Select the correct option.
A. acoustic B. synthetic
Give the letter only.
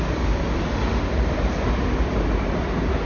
A